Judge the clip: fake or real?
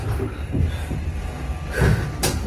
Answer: real